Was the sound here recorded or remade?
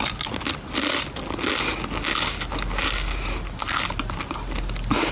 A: recorded